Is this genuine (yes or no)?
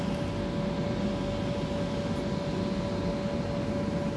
yes